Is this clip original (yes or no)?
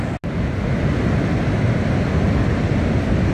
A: yes